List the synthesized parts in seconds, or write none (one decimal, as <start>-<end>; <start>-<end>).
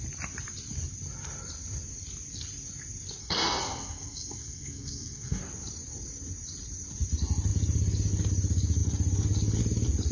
3.2-5.4